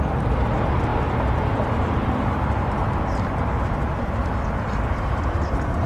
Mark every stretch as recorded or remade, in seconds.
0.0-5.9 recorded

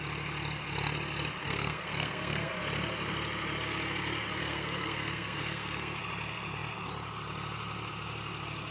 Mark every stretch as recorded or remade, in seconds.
0.0-1.4 recorded; 1.4-2.5 remade; 2.5-4.4 recorded; 4.4-6.0 remade; 6.0-8.7 recorded

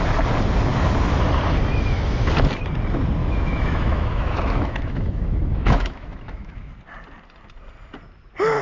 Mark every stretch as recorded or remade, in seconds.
0.0-3.2 recorded; 3.2-6.7 remade; 6.7-8.6 recorded

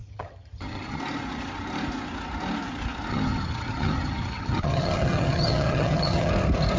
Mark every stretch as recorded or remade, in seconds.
0.0-1.0 remade; 1.0-3.1 recorded; 3.1-6.3 remade; 6.3-6.8 recorded

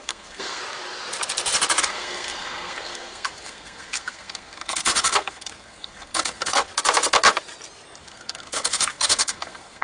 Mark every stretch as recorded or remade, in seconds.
0.0-0.6 remade; 0.6-1.8 recorded; 1.8-6.7 remade; 6.7-8.0 recorded; 8.0-9.8 remade

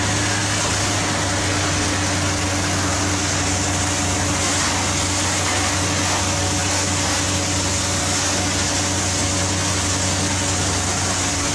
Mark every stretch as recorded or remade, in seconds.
0.0-11.5 recorded